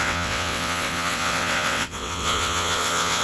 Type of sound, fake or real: fake